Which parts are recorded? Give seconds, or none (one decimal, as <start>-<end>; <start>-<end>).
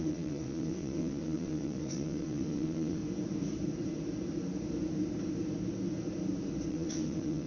3.0-6.7